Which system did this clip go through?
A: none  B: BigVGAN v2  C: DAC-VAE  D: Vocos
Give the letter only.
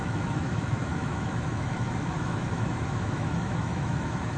C